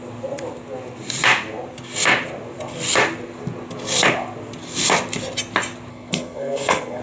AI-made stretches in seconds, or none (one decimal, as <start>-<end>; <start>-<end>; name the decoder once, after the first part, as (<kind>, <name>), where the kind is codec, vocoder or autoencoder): 5.9-7.0 (codec, SNAC)